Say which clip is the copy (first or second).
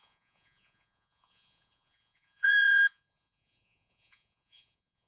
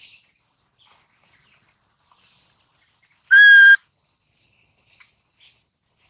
first